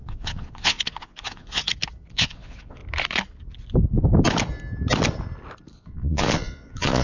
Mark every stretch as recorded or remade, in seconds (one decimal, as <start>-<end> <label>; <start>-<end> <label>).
0.0-1.6 remade; 1.6-2.1 recorded; 2.1-2.8 remade; 2.8-5.7 recorded; 5.7-7.0 remade